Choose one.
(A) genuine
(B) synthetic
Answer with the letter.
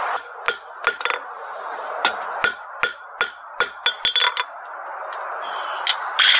A